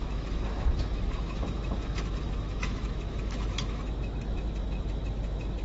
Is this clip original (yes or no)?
no